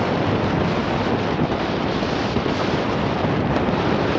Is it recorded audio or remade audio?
remade